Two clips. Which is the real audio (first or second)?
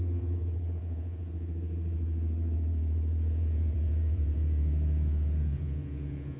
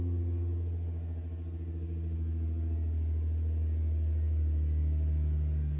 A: second